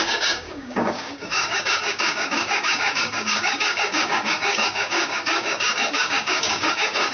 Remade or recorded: remade